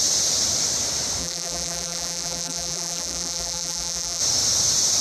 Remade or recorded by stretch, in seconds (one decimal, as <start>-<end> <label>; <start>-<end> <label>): 0.0-1.2 recorded; 1.2-4.2 remade; 4.2-5.0 recorded